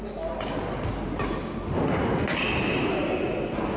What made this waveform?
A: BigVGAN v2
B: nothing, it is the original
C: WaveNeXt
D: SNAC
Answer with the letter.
B